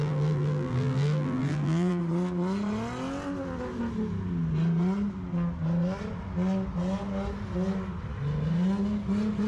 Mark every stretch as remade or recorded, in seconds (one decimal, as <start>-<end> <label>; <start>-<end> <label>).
0.0-2.0 remade; 2.0-9.5 recorded